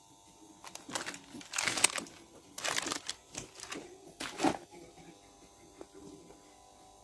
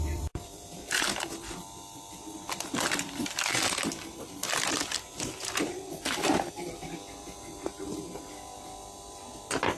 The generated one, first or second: second